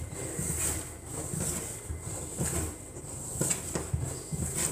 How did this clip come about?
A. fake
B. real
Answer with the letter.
B